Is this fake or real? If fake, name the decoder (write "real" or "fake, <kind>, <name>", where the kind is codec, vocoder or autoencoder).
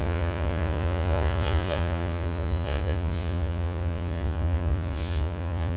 fake, vocoder, Vocos